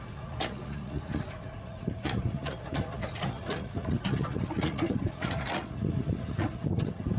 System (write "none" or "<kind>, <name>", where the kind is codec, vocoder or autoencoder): vocoder, Vocos